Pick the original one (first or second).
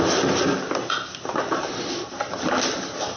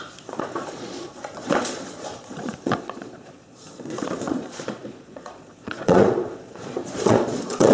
first